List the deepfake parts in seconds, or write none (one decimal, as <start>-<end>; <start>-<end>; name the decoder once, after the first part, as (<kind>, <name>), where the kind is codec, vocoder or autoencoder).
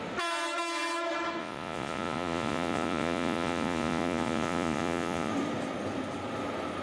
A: 1.4-5.3 (vocoder, Vocos)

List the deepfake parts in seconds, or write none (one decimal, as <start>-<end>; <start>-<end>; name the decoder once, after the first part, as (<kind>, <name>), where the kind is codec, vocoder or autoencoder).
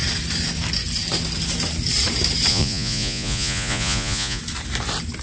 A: 2.5-4.4 (vocoder, Vocos)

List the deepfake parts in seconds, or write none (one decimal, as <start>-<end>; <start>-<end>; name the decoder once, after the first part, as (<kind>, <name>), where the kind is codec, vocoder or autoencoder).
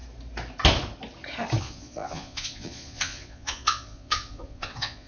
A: 1.6-5.1 (vocoder, Vocos)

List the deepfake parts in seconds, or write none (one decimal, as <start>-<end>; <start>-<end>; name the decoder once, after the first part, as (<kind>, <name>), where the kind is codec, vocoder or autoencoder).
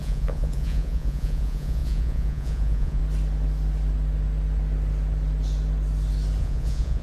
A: 0.0-3.0 (vocoder, Vocos); 6.4-7.0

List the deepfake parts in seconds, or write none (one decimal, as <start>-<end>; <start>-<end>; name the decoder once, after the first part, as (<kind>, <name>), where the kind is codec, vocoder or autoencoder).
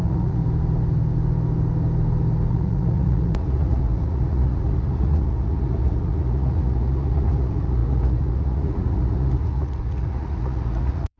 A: 0.0-0.4 (vocoder, Vocos); 2.5-11.2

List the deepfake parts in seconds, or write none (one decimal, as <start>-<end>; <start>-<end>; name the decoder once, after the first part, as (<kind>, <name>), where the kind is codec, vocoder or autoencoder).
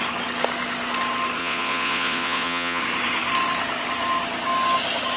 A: 1.4-2.8 (vocoder, Vocos)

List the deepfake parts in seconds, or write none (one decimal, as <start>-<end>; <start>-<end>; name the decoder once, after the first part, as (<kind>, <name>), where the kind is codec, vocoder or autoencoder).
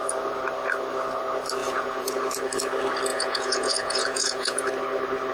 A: 1.6-2.2 (vocoder, Vocos); 3.1-4.7